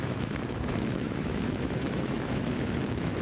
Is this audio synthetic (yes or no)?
yes